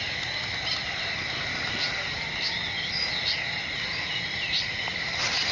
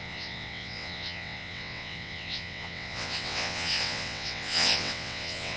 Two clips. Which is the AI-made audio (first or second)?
second